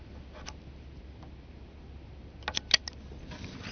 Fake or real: real